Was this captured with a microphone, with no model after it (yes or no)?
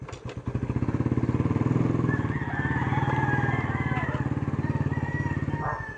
yes